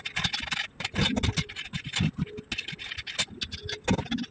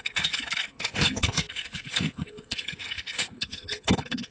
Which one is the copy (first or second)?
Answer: second